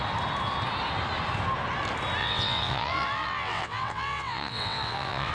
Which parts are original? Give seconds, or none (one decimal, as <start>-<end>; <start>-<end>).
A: 0.0-2.2